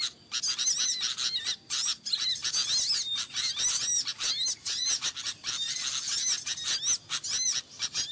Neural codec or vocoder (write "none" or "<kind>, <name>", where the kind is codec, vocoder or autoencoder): none